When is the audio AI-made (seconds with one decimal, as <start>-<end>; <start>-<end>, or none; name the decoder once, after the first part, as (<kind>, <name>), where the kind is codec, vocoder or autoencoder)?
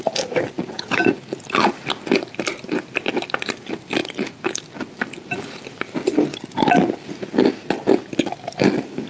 none